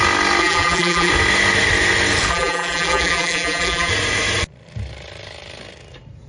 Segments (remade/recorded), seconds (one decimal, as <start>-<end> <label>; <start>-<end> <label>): 0.0-0.4 recorded; 0.4-1.1 remade; 1.1-2.3 recorded; 2.3-3.9 remade; 3.9-6.3 recorded